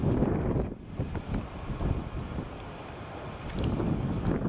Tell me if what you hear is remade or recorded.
recorded